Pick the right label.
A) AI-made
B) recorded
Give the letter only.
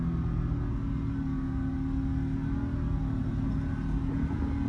B